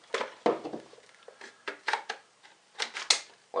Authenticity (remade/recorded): recorded